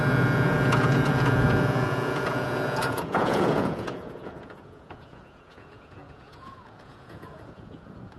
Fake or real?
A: fake